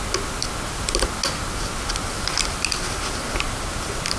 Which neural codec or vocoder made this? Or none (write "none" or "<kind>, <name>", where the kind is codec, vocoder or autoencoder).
none